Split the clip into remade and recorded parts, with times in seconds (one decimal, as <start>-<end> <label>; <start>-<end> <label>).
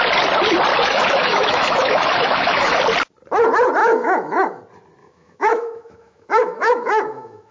0.0-0.7 recorded; 0.7-2.8 remade; 2.8-3.8 recorded; 3.8-4.6 remade; 4.6-5.0 recorded; 5.0-7.5 remade